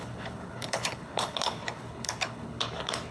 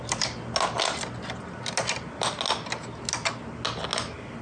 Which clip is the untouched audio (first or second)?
second